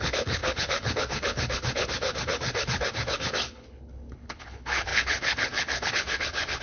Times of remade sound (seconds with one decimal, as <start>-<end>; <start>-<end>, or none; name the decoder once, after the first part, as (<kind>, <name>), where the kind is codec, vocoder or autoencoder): 0.0-6.6 (codec, HILCodec)